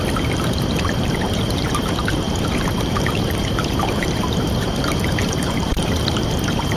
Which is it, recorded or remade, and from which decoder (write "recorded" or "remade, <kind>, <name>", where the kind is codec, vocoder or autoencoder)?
remade, vocoder, BigVGAN v2